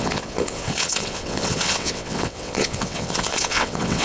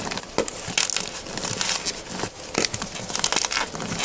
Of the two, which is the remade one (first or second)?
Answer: first